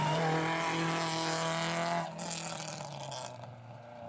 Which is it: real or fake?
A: real